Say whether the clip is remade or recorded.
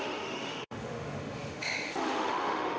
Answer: remade